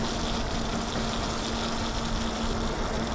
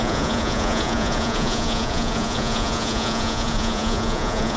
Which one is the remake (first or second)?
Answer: second